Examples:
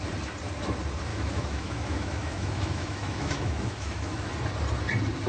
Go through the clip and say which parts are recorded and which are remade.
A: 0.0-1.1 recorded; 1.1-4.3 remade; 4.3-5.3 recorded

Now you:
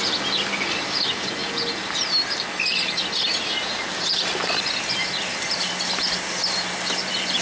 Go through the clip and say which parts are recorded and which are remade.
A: 0.0-7.4 recorded